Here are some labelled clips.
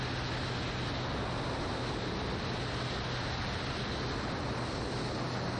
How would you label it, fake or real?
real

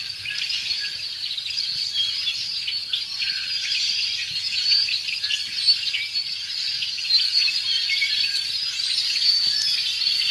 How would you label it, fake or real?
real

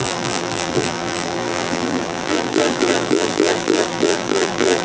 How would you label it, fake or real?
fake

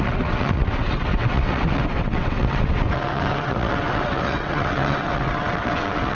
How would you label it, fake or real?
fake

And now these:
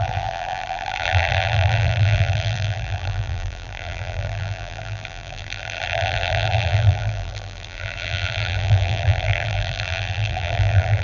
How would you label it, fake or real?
fake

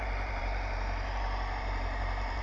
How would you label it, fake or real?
fake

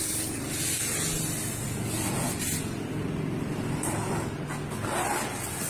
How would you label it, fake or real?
real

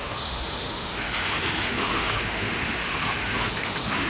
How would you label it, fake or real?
fake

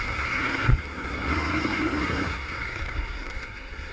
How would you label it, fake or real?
fake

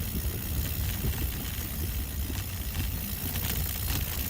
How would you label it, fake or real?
real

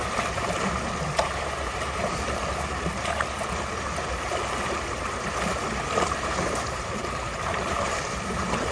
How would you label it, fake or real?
fake